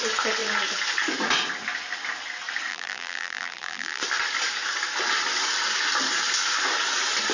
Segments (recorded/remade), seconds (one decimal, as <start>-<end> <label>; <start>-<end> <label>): 0.0-2.7 recorded; 2.7-4.0 remade; 4.0-7.3 recorded